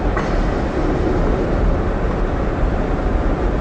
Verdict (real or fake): real